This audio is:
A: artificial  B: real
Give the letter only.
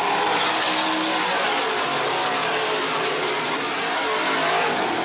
B